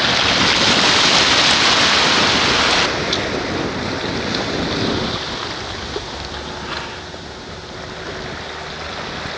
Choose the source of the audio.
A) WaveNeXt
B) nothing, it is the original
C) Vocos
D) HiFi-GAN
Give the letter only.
B